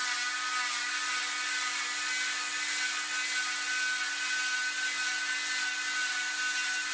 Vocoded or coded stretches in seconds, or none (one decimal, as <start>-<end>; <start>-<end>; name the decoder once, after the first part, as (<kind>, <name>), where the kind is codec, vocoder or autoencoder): none